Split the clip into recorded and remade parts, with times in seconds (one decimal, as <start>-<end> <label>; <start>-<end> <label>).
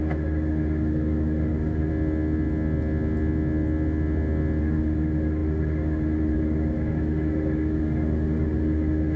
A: 0.0-1.9 remade; 1.9-4.6 recorded; 4.6-9.2 remade